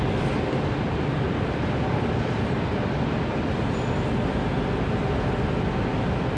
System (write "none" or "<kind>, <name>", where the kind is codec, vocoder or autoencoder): none